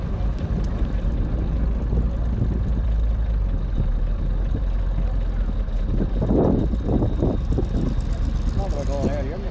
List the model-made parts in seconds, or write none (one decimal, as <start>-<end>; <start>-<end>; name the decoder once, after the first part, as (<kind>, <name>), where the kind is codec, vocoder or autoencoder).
2.7-4.6 (vocoder, BigVGAN v2)